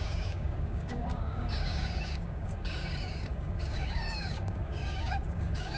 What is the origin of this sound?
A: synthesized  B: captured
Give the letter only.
A